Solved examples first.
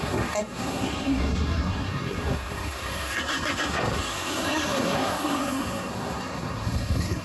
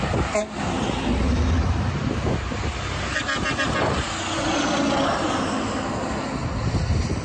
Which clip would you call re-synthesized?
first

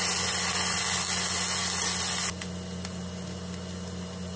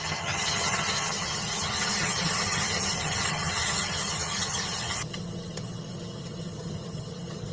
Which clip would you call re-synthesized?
second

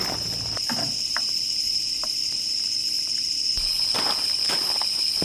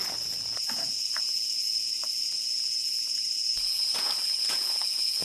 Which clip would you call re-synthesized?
second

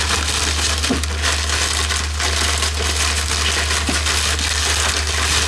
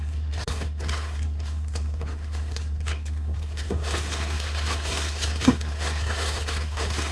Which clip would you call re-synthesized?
second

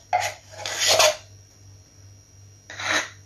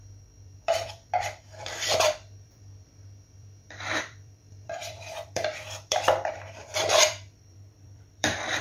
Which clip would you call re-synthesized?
second